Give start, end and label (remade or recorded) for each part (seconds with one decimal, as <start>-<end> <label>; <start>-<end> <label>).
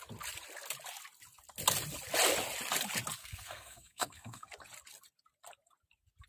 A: 0.0-3.2 recorded; 3.2-4.5 remade; 4.5-6.3 recorded